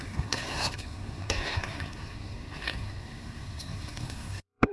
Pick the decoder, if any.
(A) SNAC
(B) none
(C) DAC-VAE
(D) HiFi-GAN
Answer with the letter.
A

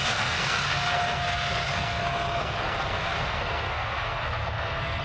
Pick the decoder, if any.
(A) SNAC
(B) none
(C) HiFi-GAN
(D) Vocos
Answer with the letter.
A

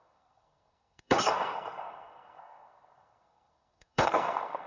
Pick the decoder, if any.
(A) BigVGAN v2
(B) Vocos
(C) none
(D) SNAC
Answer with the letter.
D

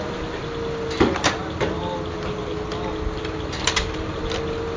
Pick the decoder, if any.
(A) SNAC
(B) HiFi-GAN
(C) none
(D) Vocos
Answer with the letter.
C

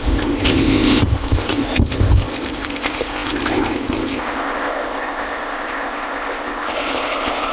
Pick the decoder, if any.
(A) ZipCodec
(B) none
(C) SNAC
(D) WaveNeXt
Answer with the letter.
A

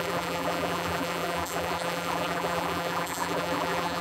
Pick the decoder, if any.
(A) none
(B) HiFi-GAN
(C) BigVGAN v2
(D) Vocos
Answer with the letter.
C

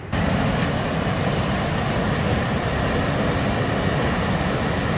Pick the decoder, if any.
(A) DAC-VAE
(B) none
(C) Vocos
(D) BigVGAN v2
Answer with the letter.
B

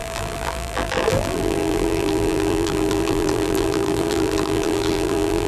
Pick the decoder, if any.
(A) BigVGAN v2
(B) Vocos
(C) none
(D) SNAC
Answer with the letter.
A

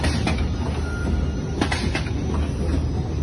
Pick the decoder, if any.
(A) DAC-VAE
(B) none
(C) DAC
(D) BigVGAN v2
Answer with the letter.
B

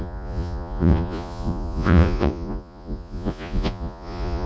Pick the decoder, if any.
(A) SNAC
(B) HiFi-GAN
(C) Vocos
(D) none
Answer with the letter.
C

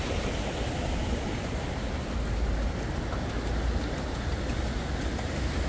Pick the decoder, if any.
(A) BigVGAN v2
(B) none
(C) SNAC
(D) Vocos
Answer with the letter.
B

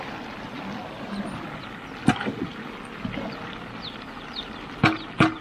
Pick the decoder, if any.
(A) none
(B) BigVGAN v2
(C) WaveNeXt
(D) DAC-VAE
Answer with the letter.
A